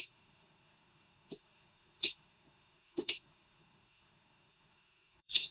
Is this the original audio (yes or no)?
no